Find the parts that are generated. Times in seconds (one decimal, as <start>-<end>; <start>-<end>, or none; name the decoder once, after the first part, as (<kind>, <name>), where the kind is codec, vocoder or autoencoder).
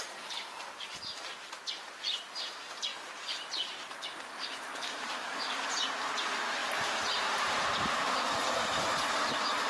0.0-1.3 (vocoder, BigVGAN v2); 2.3-2.9; 4.6-9.7